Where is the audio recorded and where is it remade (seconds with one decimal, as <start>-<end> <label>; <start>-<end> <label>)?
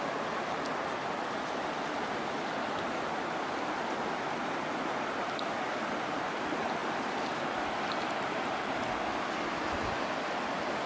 0.0-10.9 recorded